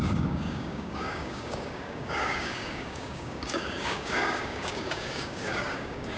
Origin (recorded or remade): remade